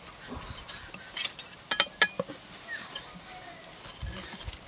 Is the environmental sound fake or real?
real